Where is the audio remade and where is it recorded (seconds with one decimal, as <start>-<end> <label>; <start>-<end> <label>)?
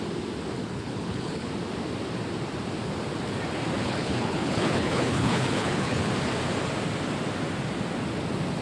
0.0-0.6 recorded; 0.6-1.5 remade; 1.5-3.8 recorded; 3.8-6.1 remade; 6.1-8.6 recorded